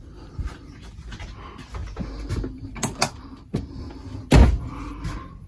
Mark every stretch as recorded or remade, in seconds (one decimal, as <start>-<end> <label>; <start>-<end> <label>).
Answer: 0.0-5.5 recorded